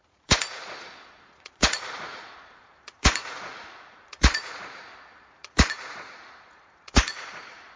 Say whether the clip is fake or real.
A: fake